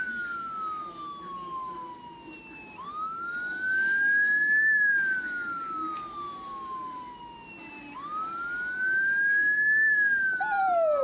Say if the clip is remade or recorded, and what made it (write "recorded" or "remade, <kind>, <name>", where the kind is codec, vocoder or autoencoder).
recorded